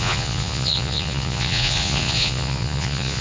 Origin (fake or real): fake